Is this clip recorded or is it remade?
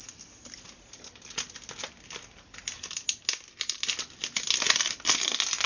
recorded